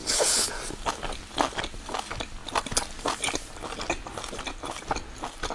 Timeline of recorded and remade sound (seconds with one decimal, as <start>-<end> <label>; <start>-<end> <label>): 0.0-0.5 remade; 0.5-5.5 recorded